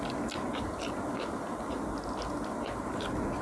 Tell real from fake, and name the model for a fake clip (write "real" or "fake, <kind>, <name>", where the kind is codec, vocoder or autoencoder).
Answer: real